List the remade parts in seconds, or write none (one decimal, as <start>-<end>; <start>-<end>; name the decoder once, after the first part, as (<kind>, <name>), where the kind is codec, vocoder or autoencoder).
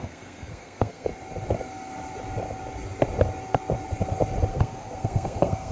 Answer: 0.0-1.1 (codec, SNAC); 4.5-5.7